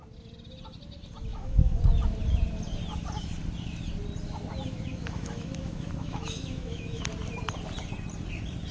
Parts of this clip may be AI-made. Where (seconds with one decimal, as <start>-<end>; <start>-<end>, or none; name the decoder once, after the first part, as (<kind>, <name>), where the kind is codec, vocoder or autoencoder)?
1.3-1.8 (autoencoder, DAC-VAE); 4.9-7.0